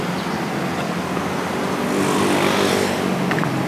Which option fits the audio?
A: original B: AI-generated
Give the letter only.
A